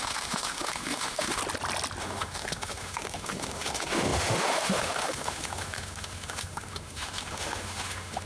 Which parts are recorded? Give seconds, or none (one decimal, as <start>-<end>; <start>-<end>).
1.4-2.0